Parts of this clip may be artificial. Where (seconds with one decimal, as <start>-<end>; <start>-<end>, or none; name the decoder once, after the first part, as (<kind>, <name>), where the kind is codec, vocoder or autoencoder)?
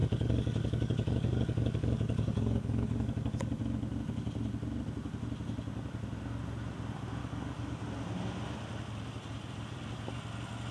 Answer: 0.0-3.6 (codec, DAC); 7.2-7.8